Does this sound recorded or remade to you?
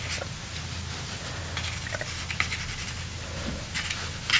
recorded